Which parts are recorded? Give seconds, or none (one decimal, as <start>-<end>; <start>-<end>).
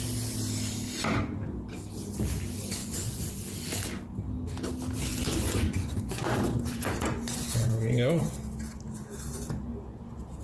0.0-2.8; 3.3-5.1; 8.2-10.4